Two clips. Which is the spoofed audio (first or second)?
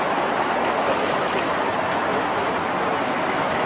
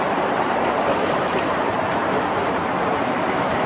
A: second